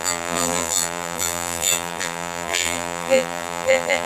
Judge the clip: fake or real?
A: fake